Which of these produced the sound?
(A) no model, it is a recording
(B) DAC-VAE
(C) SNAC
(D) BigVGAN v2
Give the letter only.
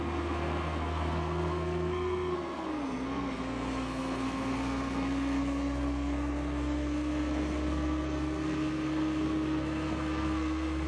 C